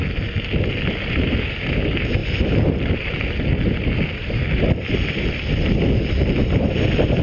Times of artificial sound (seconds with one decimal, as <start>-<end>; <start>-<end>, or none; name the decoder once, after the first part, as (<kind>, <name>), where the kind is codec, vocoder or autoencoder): none

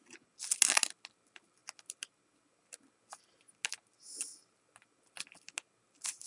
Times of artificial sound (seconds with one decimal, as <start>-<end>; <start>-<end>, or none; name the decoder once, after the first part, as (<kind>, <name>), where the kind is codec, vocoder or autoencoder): none

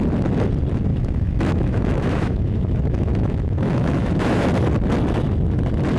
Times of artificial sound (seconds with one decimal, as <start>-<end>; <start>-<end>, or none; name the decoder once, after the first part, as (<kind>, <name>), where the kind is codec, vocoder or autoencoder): 0.9-4.5 (autoencoder, DAC-VAE)

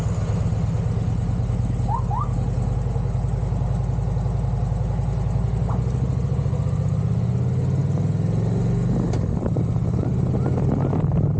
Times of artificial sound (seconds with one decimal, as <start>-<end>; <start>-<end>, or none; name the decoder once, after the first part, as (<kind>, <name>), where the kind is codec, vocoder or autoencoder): none

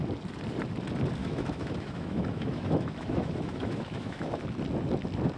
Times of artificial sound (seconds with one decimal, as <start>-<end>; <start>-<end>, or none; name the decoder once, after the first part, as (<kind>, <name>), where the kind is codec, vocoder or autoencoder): 1.2-4.4 (autoencoder, DAC-VAE)

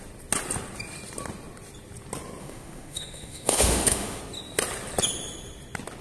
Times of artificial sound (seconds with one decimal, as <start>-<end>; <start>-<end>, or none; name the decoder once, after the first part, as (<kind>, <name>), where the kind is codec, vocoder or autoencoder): 2.4-4.2 (autoencoder, DAC-VAE)

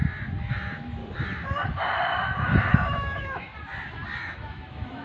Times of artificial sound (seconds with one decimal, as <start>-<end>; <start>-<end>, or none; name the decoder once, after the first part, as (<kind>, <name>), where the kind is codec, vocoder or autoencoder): 0.5-1.0 (autoencoder, DAC-VAE); 2.7-3.5; 4.2-5.0